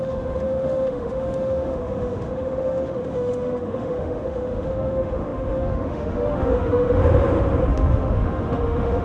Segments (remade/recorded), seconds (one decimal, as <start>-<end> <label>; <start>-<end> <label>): 0.0-7.0 remade; 7.0-7.7 recorded; 7.7-9.0 remade